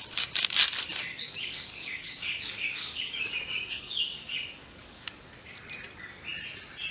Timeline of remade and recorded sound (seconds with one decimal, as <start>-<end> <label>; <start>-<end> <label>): 0.0-1.1 recorded; 1.1-5.2 remade; 5.2-6.9 recorded